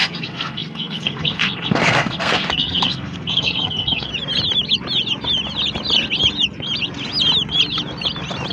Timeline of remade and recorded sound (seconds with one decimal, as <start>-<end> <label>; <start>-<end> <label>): 0.0-4.1 remade; 4.1-8.5 recorded